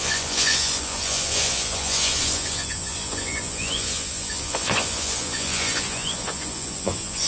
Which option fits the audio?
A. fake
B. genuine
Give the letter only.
A